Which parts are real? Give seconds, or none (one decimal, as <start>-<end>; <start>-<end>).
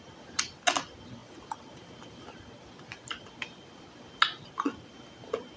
0.0-1.2; 2.4-5.6